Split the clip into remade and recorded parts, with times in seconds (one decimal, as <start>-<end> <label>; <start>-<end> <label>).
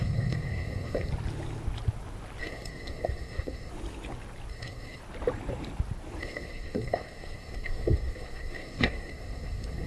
0.0-1.1 remade; 1.1-2.4 recorded; 2.4-3.7 remade; 3.7-4.5 recorded; 4.5-5.0 remade; 5.0-6.2 recorded; 6.2-9.9 remade